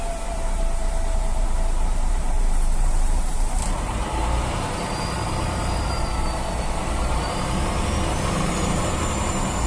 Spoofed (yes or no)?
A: yes